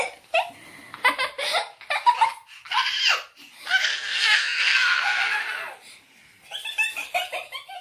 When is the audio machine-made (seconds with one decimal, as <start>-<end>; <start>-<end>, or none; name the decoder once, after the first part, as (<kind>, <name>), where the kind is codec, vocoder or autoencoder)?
3.8-5.3 (codec, SNAC)